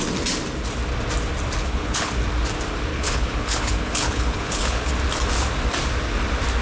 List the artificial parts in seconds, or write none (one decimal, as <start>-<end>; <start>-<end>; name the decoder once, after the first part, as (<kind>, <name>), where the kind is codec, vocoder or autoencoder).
1.6-2.1 (codec, HILCodec); 2.9-4.9